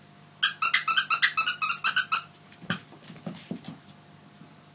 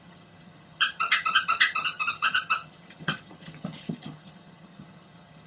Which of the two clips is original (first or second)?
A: first